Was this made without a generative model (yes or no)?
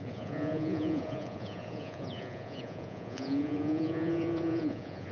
no